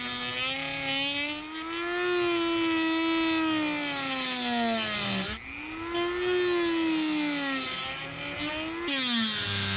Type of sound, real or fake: real